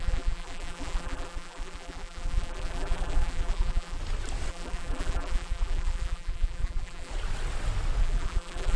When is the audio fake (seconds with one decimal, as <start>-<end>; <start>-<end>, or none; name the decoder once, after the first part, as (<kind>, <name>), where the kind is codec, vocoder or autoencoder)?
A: 0.0-4.0 (vocoder, BigVGAN v2); 4.5-7.1; 8.0-8.8